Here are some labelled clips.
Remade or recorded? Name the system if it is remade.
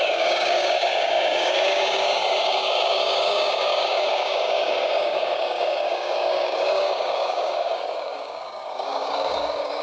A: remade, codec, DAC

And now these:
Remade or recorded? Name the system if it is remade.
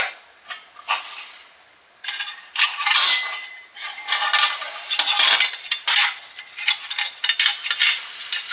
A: recorded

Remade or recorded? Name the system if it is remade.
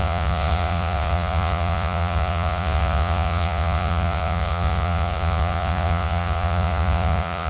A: remade, vocoder, Vocos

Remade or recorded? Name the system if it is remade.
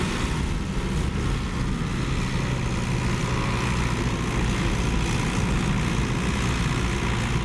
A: recorded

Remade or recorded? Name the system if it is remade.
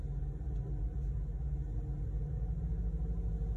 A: recorded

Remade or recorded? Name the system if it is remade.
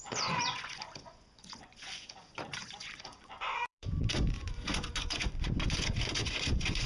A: remade, vocoder, Vocos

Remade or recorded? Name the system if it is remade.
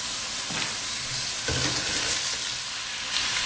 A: recorded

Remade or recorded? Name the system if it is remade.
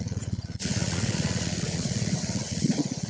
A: remade, vocoder, Vocos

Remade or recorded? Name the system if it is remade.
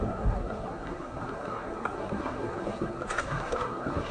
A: remade, codec, SNAC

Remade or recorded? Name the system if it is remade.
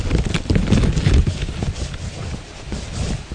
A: recorded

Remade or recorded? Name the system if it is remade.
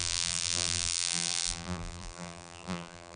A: remade, vocoder, BigVGAN v2